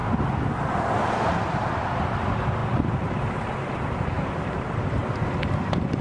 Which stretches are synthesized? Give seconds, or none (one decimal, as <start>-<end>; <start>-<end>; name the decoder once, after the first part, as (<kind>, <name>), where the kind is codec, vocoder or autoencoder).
1.0-5.0 (vocoder, BigVGAN v2); 5.6-6.0